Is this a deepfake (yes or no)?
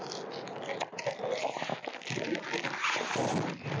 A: no